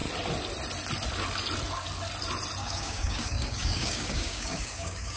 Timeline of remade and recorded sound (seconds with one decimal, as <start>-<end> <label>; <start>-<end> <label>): 0.0-2.6 recorded; 2.6-5.2 remade